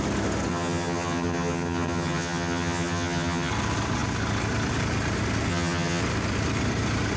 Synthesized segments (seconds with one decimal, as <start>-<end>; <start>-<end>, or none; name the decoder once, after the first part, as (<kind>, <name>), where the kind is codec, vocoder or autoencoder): 0.5-3.5 (vocoder, HiFi-GAN); 5.5-6.0